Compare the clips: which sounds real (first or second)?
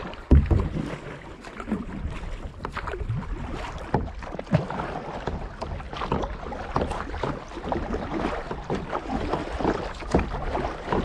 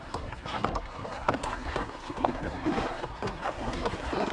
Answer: first